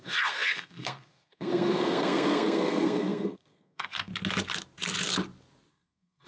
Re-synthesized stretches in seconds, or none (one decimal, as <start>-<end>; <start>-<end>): 0.0-4.1; 5.7-6.3